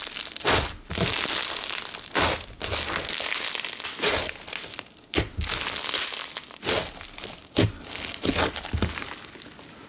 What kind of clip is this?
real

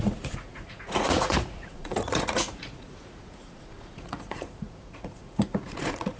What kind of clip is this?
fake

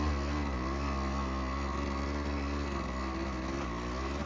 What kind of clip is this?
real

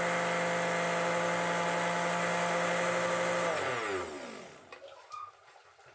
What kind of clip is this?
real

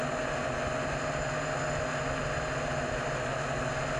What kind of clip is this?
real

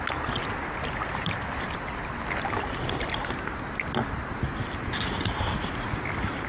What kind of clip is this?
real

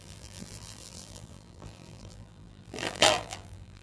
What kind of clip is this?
fake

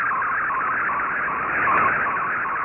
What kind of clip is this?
real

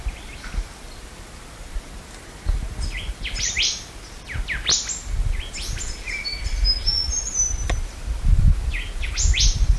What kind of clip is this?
real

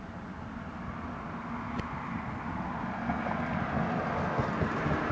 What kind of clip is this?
real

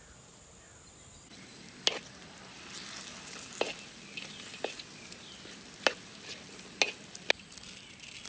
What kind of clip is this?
real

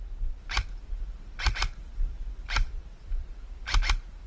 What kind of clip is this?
fake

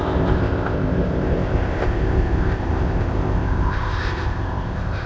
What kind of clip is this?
fake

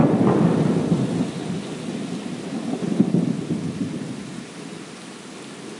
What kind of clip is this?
real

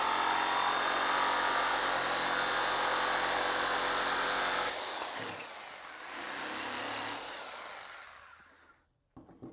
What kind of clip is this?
real